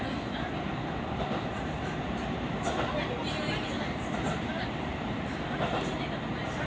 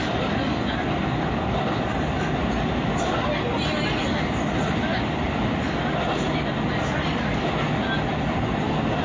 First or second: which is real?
second